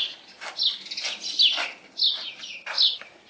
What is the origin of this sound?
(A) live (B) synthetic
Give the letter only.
A